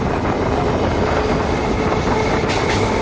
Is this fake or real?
real